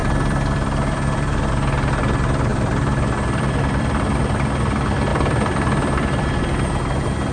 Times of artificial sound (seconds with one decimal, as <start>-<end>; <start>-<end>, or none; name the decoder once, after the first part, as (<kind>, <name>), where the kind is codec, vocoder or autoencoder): 0.0-1.5 (vocoder, BigVGAN v2); 2.5-4.2; 5.1-7.3